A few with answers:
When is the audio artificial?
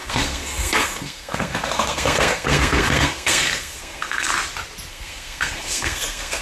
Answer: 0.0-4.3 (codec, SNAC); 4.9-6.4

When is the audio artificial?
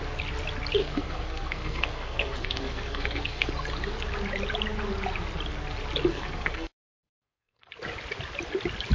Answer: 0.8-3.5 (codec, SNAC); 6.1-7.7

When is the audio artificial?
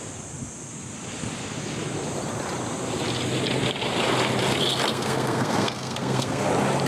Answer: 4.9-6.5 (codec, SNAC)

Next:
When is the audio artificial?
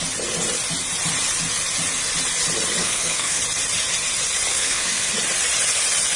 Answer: 2.8-3.4 (codec, SNAC); 4.5-5.1